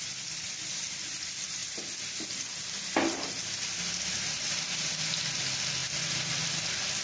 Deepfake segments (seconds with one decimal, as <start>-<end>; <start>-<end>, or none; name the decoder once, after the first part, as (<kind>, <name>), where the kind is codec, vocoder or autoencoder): none